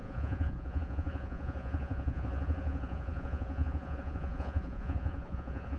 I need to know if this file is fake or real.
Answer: fake